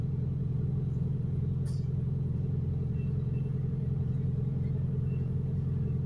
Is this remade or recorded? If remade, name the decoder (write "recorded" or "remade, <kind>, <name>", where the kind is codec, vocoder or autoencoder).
remade, vocoder, Vocos